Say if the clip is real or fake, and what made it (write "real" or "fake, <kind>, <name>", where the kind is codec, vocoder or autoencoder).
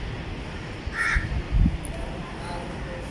real